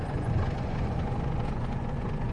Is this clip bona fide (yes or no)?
no